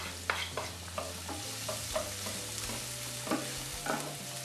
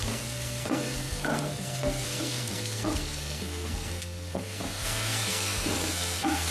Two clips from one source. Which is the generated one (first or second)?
second